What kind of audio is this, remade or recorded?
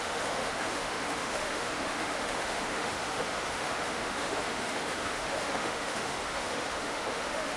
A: remade